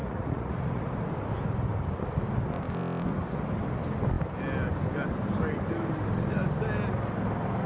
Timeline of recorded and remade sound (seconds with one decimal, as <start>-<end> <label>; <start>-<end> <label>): 0.0-0.9 remade; 0.9-7.7 recorded